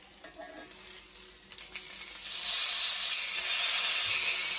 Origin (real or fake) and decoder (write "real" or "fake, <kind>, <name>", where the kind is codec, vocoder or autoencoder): real